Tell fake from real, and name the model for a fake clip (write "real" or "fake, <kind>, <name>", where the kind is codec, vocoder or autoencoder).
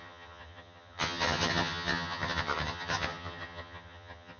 fake, vocoder, HiFi-GAN